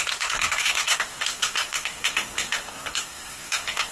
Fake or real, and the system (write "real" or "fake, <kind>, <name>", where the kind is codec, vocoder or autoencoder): fake, codec, SNAC